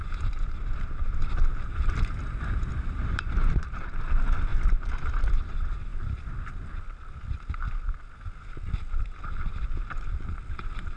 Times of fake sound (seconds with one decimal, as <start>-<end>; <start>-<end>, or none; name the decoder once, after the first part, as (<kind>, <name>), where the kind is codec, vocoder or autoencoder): 3.0-3.9 (vocoder, BigVGAN v2)